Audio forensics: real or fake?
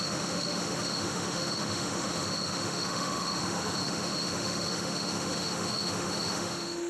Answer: fake